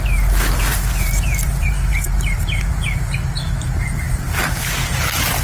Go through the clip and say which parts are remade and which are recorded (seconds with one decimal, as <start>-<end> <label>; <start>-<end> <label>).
0.0-0.7 recorded; 0.7-3.9 remade; 3.9-5.4 recorded